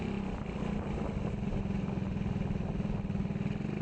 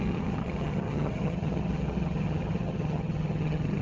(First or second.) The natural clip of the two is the first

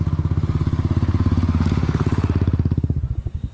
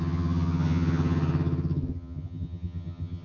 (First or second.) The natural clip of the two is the first